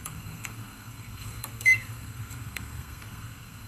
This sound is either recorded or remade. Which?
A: remade